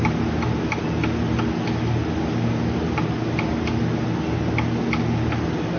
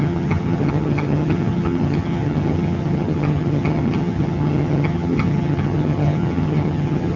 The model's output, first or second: second